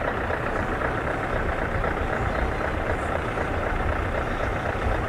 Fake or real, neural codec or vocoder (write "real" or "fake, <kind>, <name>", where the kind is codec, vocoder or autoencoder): fake, vocoder, BigVGAN v2